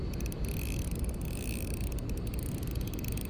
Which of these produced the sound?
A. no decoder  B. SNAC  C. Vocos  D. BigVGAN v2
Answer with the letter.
A